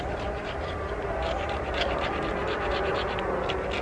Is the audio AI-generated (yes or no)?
no